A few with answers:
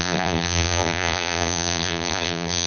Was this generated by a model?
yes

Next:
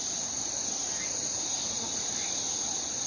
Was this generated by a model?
yes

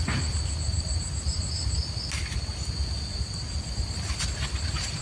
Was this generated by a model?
no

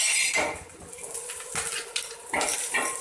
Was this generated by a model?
no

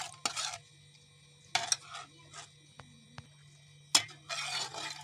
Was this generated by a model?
no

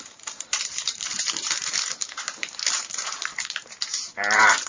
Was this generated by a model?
yes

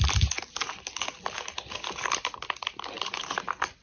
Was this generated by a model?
no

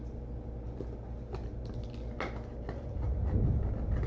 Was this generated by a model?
no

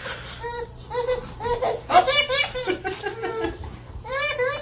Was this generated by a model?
yes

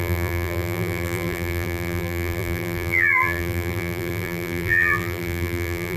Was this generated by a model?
yes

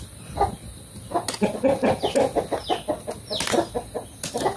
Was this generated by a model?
no